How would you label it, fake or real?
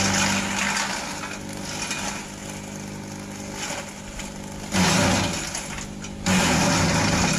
real